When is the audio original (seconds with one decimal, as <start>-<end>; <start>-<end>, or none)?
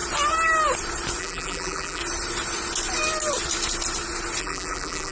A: 0.0-1.2; 2.0-4.4